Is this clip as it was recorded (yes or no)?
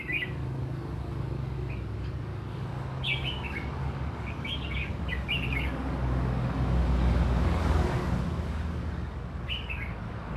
no